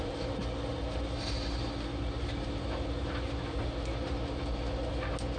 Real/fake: real